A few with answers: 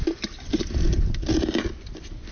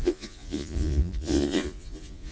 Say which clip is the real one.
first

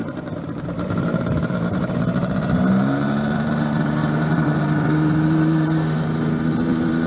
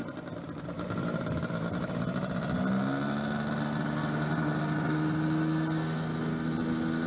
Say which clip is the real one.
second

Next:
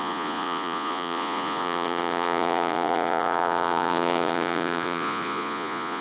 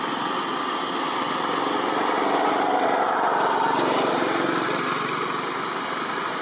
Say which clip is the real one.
second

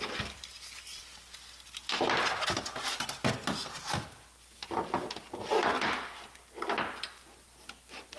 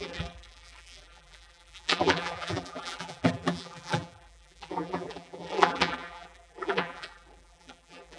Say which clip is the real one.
first